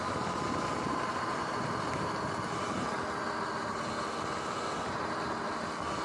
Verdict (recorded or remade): recorded